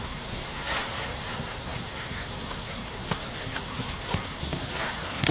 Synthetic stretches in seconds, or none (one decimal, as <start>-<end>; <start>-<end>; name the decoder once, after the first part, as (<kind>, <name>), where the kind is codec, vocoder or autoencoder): 0.0-5.3 (codec, SNAC)